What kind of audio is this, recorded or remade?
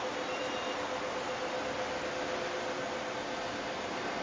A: recorded